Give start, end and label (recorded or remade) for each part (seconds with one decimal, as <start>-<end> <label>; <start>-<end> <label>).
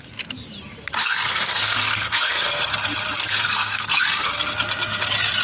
0.0-1.0 recorded; 1.0-2.7 remade; 2.7-3.2 recorded; 3.2-4.3 remade; 4.3-5.4 recorded